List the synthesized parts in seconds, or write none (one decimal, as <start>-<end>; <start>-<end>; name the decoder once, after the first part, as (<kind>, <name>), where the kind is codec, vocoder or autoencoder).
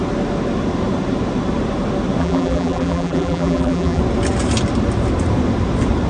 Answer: 2.2-4.0 (vocoder, BigVGAN v2)